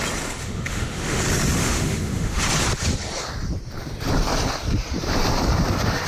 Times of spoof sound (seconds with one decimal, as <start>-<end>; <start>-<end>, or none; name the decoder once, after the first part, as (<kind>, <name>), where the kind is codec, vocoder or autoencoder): 0.4-1.2 (autoencoder, DAC-VAE); 1.6-2.4

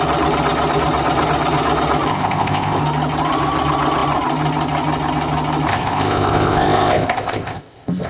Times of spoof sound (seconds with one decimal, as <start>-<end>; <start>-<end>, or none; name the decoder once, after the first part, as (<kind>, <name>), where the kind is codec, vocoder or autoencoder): 2.1-2.8 (codec, ZipCodec); 5.7-8.1

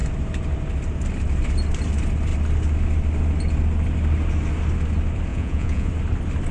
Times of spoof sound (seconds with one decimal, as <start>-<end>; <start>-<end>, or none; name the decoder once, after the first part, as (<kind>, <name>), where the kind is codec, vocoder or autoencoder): 5.3-5.9 (vocoder, Vocos)

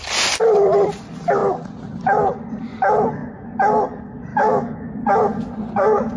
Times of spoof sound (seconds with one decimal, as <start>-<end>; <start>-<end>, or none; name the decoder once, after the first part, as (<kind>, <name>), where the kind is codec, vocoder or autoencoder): 4.3-5.0 (autoencoder, DAC-VAE)

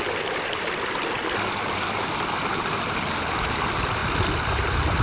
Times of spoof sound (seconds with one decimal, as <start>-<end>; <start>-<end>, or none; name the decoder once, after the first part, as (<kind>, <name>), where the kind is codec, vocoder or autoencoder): none

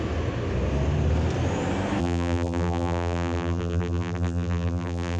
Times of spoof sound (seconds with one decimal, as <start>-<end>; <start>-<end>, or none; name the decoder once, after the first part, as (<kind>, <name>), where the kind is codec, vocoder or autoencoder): 2.0-5.2 (vocoder, BigVGAN v2)

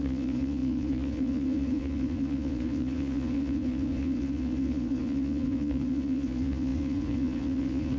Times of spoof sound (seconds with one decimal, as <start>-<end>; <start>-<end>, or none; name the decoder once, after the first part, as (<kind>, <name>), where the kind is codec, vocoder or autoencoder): 0.0-8.0 (vocoder, Vocos)